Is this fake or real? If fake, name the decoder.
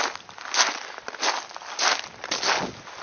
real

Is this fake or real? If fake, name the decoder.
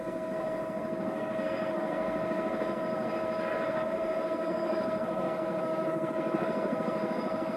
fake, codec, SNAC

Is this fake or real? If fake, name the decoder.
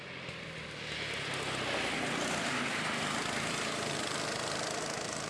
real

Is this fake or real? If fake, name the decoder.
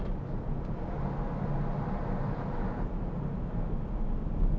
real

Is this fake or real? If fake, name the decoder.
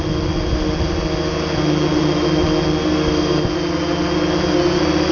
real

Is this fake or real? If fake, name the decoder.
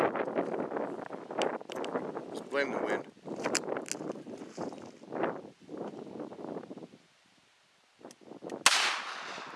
real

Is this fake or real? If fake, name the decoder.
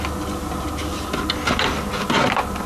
real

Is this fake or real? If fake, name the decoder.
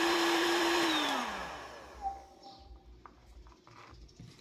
fake, vocoder, BigVGAN v2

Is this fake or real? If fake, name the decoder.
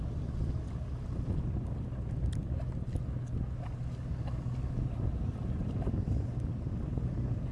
real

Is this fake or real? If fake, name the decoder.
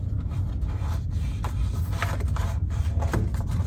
real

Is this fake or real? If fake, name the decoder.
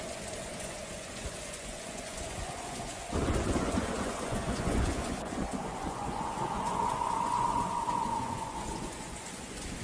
fake, vocoder, Vocos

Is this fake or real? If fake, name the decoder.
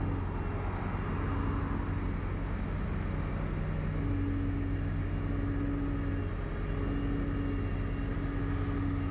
real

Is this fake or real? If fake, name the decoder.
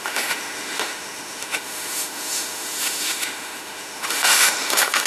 fake, autoencoder, DAC-VAE